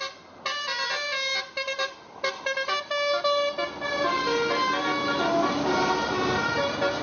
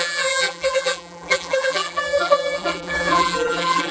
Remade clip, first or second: second